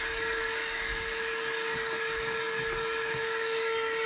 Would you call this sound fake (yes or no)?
yes